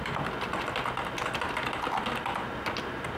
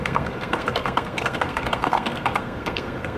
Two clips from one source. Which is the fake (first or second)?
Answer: second